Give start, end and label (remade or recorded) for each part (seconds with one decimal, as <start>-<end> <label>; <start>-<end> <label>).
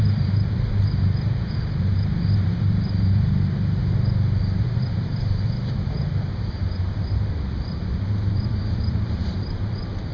0.0-3.8 remade; 3.8-4.4 recorded; 4.4-10.1 remade